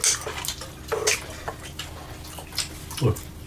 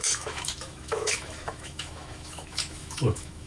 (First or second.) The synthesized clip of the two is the second